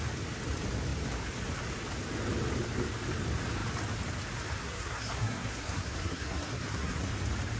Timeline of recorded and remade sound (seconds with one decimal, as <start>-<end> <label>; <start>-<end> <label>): 0.0-4.6 recorded; 4.6-7.1 remade; 7.1-7.6 recorded